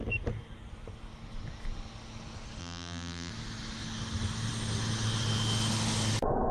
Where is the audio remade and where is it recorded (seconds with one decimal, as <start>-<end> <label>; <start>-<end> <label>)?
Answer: 0.0-2.6 recorded; 2.6-3.3 remade; 3.3-6.5 recorded